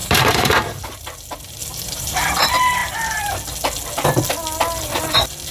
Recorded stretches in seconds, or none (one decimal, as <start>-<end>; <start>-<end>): 1.0-1.6; 2.4-2.8; 3.3-5.5